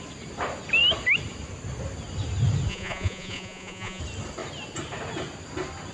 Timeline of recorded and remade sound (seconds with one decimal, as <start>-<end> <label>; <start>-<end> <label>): 0.0-2.7 recorded; 2.7-4.0 remade; 4.0-5.9 recorded